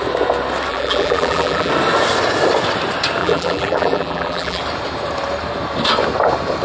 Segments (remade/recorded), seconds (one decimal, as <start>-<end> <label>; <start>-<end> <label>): 0.0-0.7 recorded; 0.7-1.7 remade; 1.7-3.2 recorded; 3.2-4.6 remade; 4.6-6.6 recorded